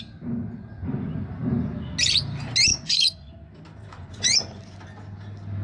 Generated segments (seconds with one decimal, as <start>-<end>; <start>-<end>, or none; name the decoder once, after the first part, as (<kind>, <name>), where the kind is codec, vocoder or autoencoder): 2.7-3.3 (vocoder, Vocos); 3.9-4.6